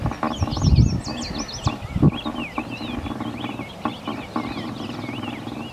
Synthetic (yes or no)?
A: no